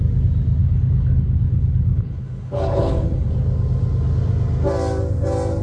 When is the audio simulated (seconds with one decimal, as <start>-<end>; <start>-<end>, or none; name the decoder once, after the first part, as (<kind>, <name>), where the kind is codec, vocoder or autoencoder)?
0.6-3.3 (codec, HILCodec)